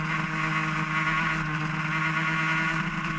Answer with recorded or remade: recorded